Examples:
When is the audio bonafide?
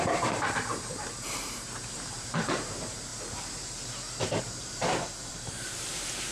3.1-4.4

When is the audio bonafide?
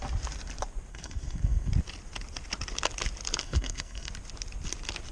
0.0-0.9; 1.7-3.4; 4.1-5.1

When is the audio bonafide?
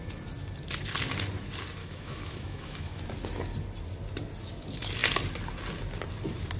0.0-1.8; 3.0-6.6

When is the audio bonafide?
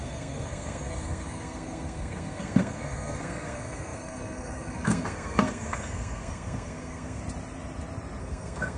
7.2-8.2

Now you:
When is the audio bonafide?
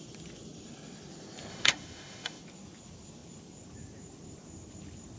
0.0-1.5; 2.4-5.2